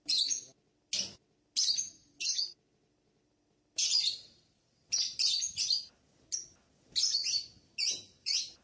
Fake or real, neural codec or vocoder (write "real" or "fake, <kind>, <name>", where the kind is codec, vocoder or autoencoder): real